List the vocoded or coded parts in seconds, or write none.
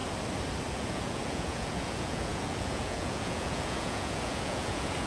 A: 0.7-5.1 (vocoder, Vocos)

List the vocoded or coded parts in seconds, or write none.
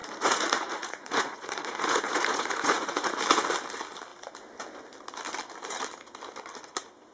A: 0.0-3.1 (vocoder, Vocos)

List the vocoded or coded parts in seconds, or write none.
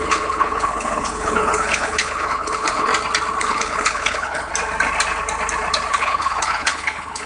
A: 0.0-2.9 (codec, HILCodec); 3.4-4.5; 5.9-7.3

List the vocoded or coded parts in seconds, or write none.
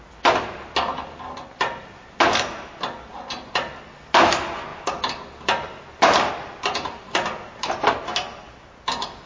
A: none